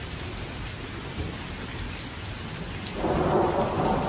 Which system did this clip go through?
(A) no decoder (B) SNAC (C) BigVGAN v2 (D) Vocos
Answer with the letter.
A